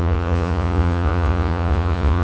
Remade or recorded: remade